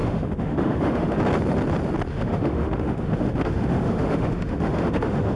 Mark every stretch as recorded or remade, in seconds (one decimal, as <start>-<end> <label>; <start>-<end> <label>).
0.0-1.2 remade; 1.2-2.1 recorded; 2.1-5.4 remade